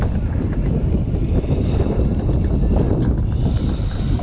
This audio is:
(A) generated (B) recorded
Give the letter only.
A